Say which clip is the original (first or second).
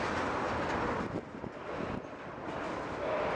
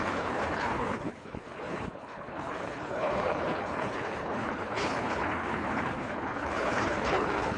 first